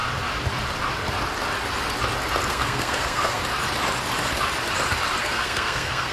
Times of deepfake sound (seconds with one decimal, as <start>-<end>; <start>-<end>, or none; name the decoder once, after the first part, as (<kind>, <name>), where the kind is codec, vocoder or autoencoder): 2.5-3.4 (codec, SNAC); 5.2-6.1